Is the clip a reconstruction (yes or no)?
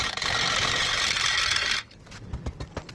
no